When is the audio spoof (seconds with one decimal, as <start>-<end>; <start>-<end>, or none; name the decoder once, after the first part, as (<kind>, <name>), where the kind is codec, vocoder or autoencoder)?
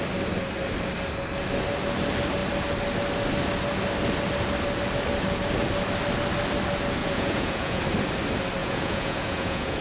7.0-7.8 (vocoder, Vocos); 8.6-9.8